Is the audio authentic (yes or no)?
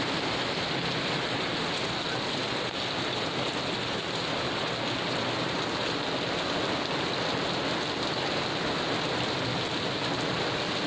yes